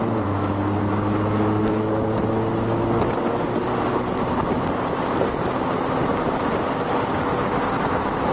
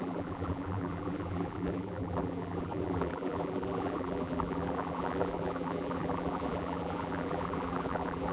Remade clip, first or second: second